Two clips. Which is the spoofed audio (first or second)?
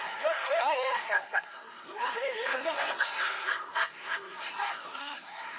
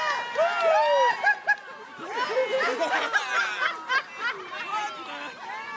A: first